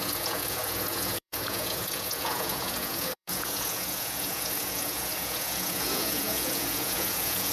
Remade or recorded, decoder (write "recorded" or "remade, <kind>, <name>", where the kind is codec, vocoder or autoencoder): remade, vocoder, Vocos